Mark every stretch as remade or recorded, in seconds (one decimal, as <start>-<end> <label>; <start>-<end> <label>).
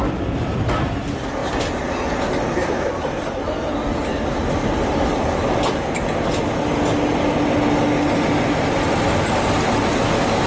0.0-10.5 recorded